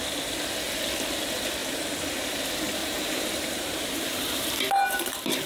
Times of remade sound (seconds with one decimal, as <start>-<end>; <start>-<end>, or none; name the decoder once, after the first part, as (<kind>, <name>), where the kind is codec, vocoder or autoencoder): 2.8-5.0 (vocoder, BigVGAN v2)